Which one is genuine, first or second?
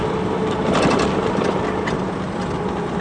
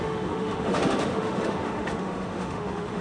first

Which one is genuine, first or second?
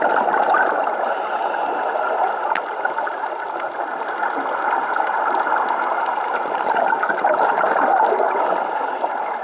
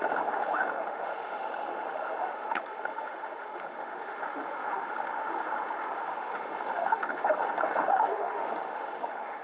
first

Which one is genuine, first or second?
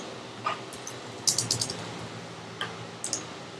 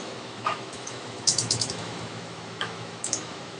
first